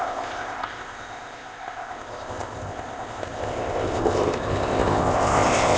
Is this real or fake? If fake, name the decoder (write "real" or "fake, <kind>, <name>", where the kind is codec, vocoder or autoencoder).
fake, codec, ZipCodec